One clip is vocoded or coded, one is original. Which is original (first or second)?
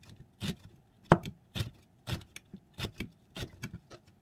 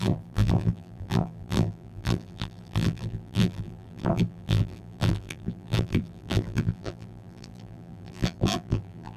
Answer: first